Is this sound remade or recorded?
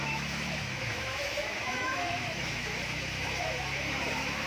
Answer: remade